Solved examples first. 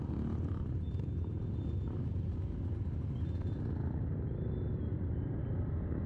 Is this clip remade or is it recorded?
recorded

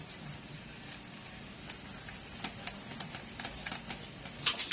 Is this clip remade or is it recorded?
remade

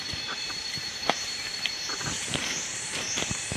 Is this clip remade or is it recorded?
remade